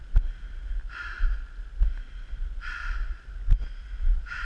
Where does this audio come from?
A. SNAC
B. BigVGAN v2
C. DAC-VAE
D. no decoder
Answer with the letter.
D